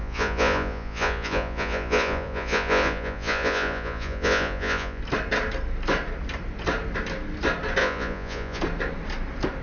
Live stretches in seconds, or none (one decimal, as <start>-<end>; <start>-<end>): 5.0-7.8; 8.6-9.6